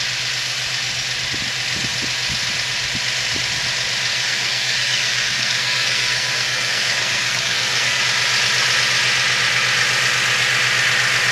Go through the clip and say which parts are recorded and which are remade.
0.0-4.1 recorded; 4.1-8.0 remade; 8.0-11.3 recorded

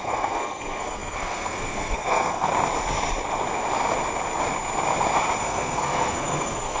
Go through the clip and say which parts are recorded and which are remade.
0.0-2.5 remade; 2.5-5.4 recorded; 5.4-6.8 remade

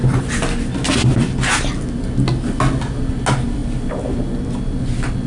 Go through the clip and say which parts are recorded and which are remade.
0.0-5.3 recorded

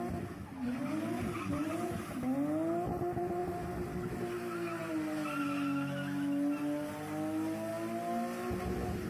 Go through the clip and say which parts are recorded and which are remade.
0.0-9.1 recorded

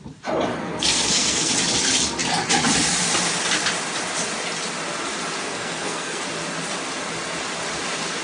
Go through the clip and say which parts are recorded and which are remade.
0.0-0.6 recorded; 0.6-1.5 remade; 1.5-5.4 recorded; 5.4-6.2 remade; 6.2-8.2 recorded